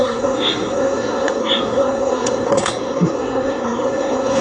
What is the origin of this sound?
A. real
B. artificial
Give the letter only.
B